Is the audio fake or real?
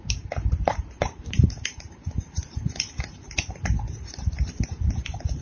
fake